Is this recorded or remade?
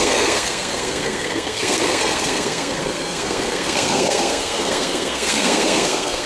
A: remade